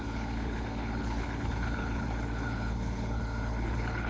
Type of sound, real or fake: fake